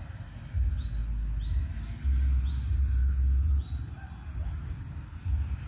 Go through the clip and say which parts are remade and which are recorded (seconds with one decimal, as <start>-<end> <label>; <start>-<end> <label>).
0.0-5.7 recorded